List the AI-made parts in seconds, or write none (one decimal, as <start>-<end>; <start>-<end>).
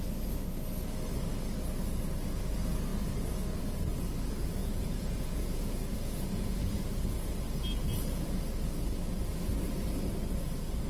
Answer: 4.6-6.8; 7.8-8.4